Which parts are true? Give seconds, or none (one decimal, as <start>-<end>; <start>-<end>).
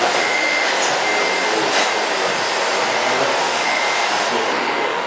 0.7-3.4; 3.8-4.5